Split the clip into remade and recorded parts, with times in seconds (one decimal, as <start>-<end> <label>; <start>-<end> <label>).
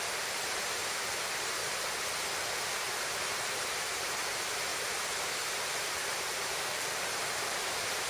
0.0-1.6 remade; 1.6-2.5 recorded; 2.5-8.1 remade